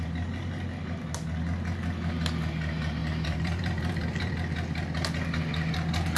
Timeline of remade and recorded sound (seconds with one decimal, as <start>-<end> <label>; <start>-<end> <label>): 0.0-3.0 recorded; 3.0-4.3 remade; 4.3-6.2 recorded